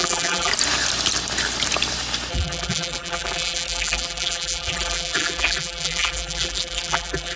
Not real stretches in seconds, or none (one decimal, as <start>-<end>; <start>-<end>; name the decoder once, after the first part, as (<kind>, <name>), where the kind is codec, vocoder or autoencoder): 0.0-0.5 (vocoder, BigVGAN v2); 2.3-7.4